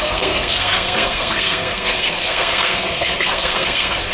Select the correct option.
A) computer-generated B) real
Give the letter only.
A